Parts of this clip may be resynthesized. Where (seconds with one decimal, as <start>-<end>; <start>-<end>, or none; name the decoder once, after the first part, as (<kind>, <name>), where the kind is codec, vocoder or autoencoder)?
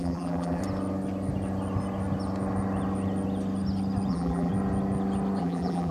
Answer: 0.0-0.6 (vocoder, BigVGAN v2); 4.1-4.5; 5.4-5.9